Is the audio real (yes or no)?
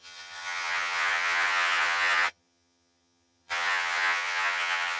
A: no